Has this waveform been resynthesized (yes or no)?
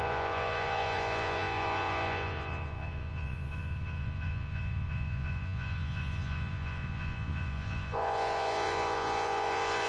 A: yes